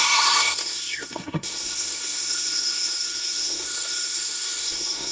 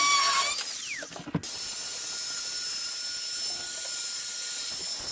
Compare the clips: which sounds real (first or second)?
second